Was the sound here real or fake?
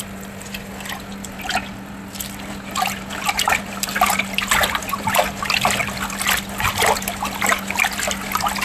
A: real